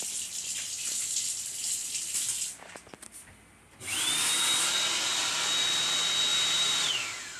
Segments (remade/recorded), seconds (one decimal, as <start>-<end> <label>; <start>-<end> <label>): 0.0-6.3 recorded; 6.3-6.9 remade; 6.9-7.4 recorded